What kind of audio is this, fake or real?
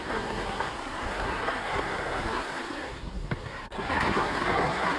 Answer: fake